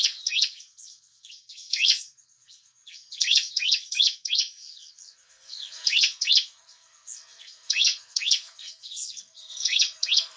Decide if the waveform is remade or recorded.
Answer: remade